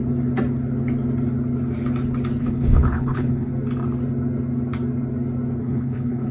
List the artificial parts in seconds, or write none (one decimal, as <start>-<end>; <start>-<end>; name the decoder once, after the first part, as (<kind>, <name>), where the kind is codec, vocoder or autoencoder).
2.4-3.5 (codec, HILCodec); 5.6-6.3